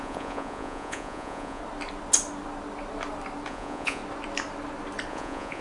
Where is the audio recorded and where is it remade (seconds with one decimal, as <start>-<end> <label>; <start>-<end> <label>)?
0.0-1.6 remade; 1.6-3.5 recorded; 3.5-4.0 remade; 4.0-5.1 recorded; 5.1-5.6 remade